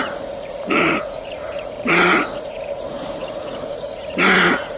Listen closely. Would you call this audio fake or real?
fake